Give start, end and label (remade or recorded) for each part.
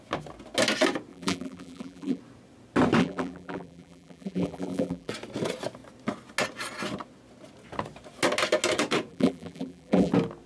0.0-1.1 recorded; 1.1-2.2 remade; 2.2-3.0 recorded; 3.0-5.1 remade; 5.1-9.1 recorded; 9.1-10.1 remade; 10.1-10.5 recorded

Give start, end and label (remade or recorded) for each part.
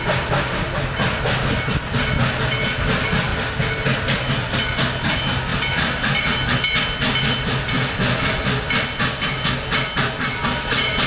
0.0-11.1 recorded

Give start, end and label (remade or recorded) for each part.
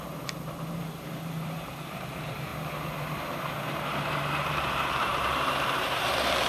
0.0-2.5 remade; 2.5-3.7 recorded; 3.7-6.5 remade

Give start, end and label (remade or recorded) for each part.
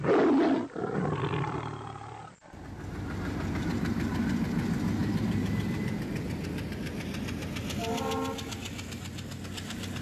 0.0-5.0 recorded; 5.0-5.8 remade; 5.8-10.0 recorded